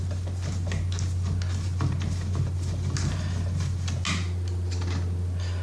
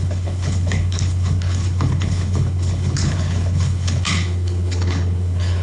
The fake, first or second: second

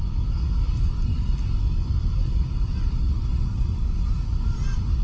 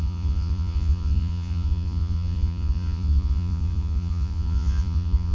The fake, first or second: second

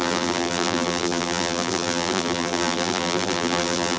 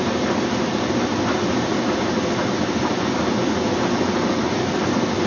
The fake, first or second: first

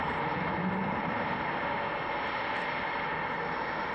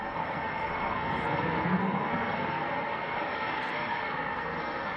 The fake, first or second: second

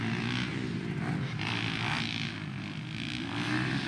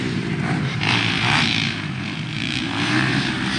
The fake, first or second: second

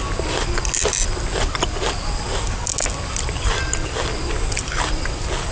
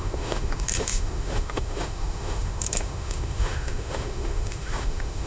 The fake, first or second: second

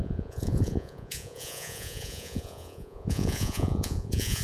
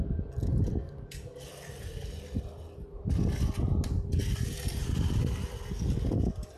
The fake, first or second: first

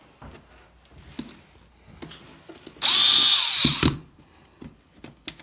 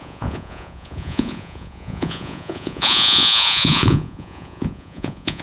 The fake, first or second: second